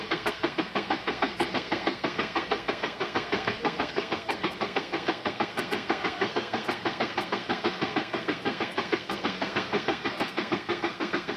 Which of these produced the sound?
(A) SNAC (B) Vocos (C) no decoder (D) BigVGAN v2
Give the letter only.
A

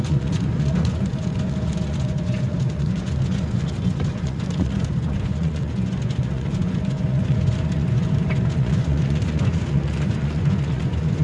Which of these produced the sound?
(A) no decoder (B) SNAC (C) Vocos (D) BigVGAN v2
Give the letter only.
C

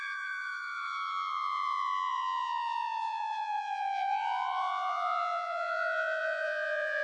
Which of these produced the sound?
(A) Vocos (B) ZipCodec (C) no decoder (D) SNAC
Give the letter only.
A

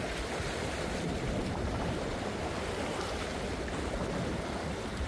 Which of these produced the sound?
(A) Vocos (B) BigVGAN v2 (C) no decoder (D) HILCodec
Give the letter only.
C